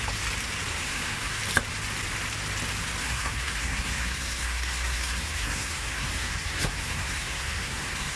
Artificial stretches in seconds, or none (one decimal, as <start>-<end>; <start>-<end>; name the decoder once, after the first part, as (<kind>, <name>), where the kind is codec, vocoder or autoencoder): 0.7-1.4 (codec, SNAC); 3.0-8.2